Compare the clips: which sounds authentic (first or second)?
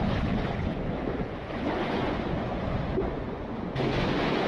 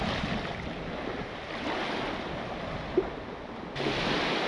second